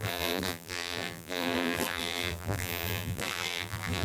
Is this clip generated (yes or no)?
yes